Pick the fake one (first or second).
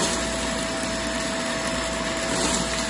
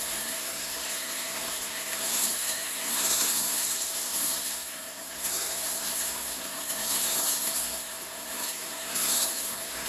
second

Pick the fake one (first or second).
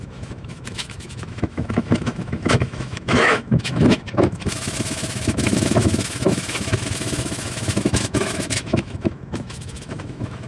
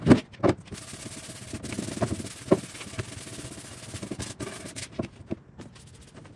first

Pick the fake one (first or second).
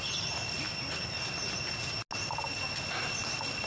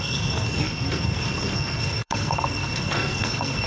second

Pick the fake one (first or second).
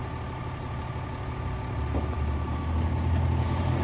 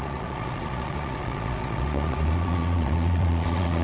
second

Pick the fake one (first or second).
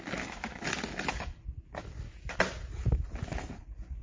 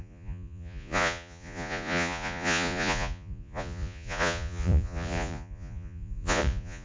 second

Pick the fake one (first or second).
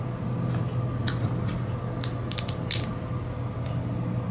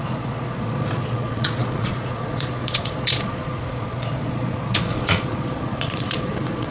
second